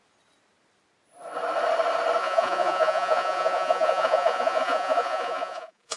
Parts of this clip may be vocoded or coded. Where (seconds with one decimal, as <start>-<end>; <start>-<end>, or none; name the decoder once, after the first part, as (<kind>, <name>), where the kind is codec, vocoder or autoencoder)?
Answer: 2.2-6.0 (vocoder, Vocos)